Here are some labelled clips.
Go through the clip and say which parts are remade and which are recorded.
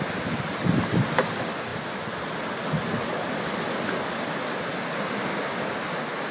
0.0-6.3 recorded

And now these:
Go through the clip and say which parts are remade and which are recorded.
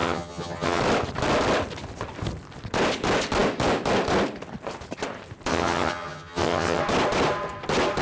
0.0-0.8 remade; 0.8-5.5 recorded; 5.5-6.8 remade; 6.8-8.0 recorded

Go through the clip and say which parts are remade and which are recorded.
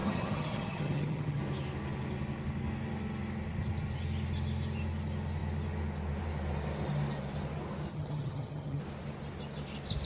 0.0-1.4 remade; 1.4-7.9 recorded; 7.9-8.8 remade; 8.8-10.0 recorded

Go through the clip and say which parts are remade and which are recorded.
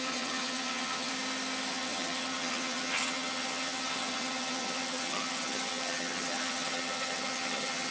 0.0-1.1 remade; 1.1-1.7 recorded; 1.7-7.9 remade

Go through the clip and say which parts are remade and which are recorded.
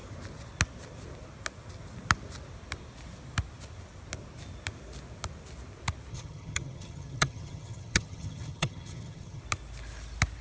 0.0-6.1 recorded; 6.1-9.4 remade; 9.4-10.4 recorded